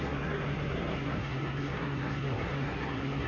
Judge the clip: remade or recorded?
remade